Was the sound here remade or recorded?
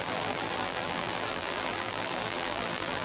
remade